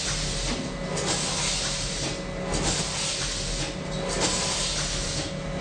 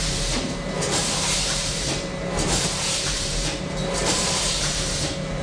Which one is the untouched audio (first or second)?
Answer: first